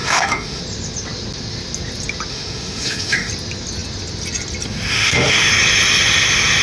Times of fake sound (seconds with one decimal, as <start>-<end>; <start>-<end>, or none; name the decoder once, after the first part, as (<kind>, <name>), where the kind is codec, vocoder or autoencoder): 0.0-0.6 (autoencoder, DAC-VAE); 2.3-3.3; 4.9-5.5